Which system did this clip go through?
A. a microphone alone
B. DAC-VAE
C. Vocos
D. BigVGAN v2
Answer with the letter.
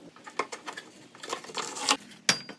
A